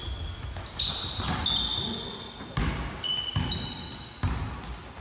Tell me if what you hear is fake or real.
real